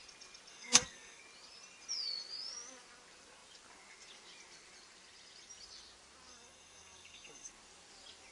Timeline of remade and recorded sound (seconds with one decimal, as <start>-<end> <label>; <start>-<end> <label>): 0.0-0.5 recorded; 0.5-1.2 remade; 1.2-6.3 recorded; 6.3-7.5 remade; 7.5-8.3 recorded